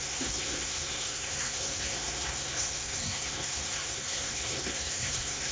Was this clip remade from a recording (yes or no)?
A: yes